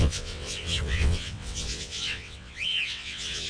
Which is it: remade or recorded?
remade